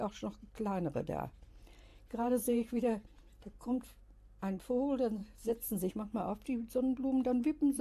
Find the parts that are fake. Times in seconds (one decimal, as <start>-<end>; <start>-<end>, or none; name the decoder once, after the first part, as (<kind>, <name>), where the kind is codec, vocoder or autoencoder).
1.9-4.0 (vocoder, Vocos); 5.2-5.9